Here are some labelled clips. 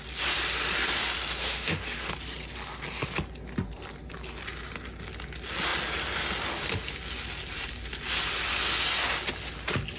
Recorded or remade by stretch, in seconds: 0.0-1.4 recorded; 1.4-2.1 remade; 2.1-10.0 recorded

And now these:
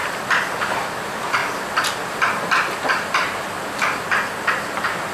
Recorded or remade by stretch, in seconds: 0.0-1.0 recorded; 1.0-1.4 remade; 1.4-4.5 recorded; 4.5-5.1 remade